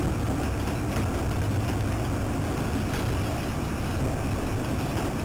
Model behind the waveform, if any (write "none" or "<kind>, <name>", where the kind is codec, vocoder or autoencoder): none